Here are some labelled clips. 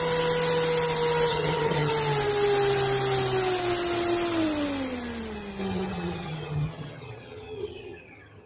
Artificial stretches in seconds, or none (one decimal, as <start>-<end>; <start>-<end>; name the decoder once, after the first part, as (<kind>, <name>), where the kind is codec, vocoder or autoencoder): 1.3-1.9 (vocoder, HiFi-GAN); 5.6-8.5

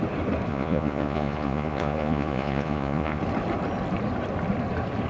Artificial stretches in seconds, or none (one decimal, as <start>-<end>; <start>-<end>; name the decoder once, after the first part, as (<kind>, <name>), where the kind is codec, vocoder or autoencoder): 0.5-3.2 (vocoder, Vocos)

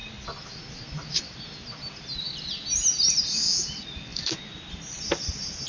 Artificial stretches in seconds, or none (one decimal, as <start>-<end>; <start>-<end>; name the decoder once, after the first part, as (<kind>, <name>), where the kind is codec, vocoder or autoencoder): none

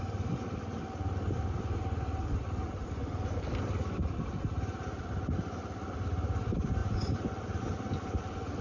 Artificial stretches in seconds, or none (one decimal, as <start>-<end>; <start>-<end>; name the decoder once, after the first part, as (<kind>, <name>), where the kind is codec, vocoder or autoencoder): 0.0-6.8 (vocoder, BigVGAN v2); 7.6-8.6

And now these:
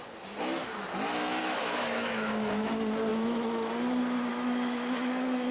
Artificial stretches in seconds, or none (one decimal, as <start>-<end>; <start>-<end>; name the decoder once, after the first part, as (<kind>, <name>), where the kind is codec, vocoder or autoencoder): 1.4-2.7 (autoencoder, DAC-VAE); 3.1-3.7; 4.3-5.5

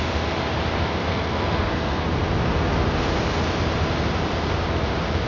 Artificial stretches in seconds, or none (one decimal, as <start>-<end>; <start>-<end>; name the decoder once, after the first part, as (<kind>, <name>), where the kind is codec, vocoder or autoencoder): 1.0-2.0 (codec, SNAC)

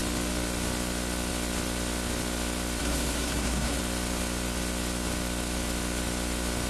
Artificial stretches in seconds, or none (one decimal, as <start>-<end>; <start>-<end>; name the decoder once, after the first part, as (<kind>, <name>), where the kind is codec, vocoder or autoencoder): 2.8-3.8 (codec, SNAC)

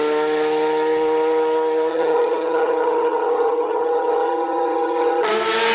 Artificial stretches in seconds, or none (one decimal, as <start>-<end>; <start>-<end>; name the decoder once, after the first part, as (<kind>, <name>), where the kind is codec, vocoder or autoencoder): 1.9-5.3 (vocoder, HiFi-GAN)